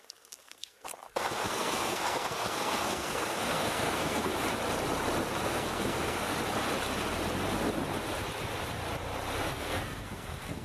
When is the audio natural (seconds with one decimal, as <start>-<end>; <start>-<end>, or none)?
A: 4.3-5.4; 6.3-9.5